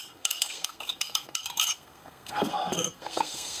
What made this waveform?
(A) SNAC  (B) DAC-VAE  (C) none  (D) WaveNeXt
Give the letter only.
A